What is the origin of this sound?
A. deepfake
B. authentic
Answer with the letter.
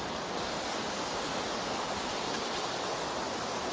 B